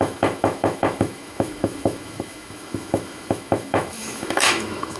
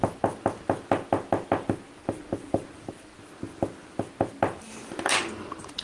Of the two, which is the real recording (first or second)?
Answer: second